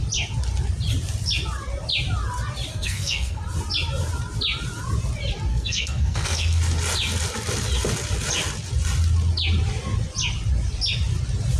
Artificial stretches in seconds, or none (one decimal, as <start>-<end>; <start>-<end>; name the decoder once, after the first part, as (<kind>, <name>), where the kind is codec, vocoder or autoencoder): 2.7-3.4 (codec, SNAC); 5.5-6.6